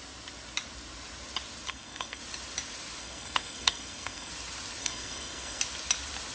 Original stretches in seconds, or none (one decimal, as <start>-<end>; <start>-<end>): 0.0-1.7; 2.2-3.0; 4.3-4.8; 5.6-6.3